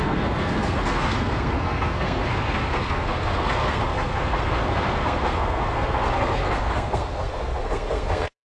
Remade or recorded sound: remade